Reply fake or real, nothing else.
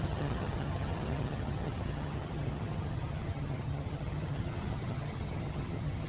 fake